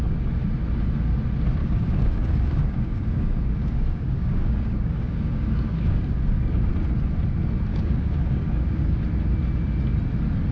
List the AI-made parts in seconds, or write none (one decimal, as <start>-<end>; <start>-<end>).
1.6-6.7; 7.7-9.0